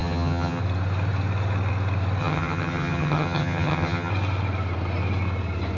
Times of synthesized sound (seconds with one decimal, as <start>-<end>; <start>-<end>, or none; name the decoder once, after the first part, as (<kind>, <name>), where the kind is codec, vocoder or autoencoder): 0.0-0.6 (vocoder, HiFi-GAN); 2.2-4.1